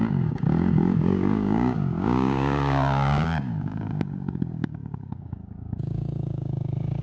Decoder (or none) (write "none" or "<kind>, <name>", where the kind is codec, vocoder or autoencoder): codec, DAC